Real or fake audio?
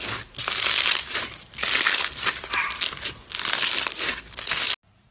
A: real